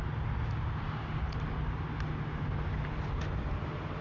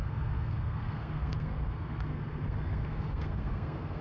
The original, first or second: first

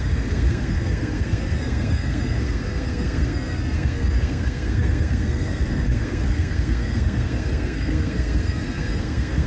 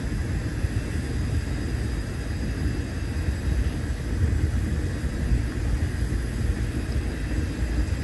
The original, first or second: second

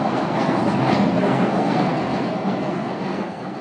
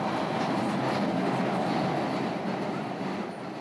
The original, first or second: second